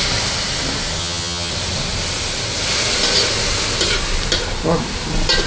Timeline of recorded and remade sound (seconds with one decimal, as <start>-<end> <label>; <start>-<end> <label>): 0.0-1.0 recorded; 1.0-1.5 remade; 1.5-5.5 recorded